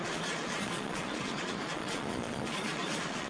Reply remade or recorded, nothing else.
remade